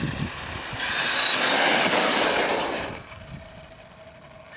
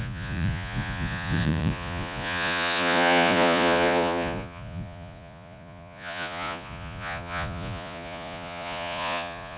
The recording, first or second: first